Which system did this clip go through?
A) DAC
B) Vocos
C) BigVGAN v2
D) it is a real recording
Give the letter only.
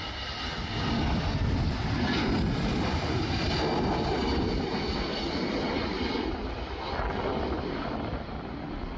D